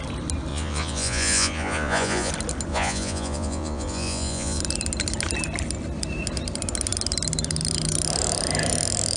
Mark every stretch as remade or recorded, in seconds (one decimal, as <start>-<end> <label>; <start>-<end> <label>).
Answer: 0.0-0.5 recorded; 0.5-2.3 remade; 2.3-2.7 recorded; 2.7-4.6 remade; 4.6-9.2 recorded